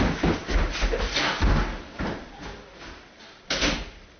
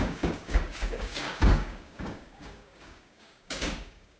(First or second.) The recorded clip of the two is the first